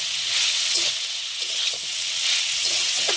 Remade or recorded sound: remade